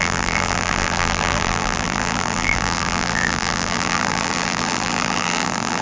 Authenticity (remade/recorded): remade